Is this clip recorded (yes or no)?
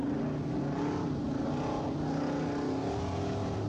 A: yes